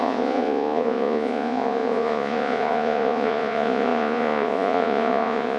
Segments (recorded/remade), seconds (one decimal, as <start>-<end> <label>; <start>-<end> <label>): 0.0-5.6 remade